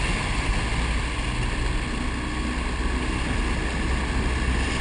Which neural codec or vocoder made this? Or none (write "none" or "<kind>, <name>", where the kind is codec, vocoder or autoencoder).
none